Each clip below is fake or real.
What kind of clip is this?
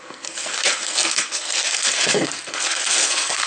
fake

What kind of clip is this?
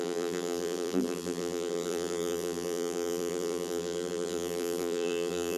fake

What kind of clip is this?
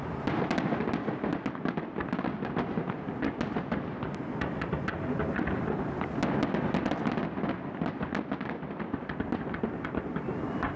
real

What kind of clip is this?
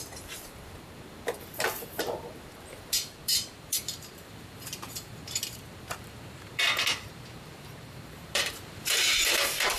fake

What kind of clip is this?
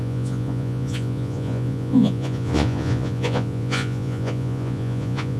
fake